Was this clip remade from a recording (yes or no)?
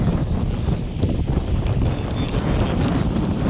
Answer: no